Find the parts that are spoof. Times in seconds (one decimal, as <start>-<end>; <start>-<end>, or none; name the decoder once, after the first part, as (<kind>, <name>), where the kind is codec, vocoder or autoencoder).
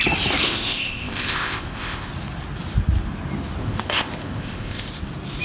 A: 0.4-2.1 (codec, ZipCodec); 3.6-4.9